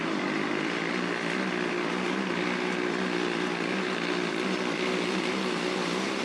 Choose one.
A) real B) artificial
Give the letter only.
A